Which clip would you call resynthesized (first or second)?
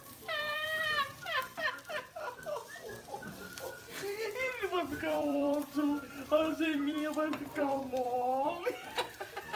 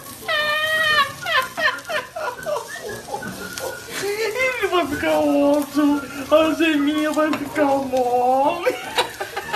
first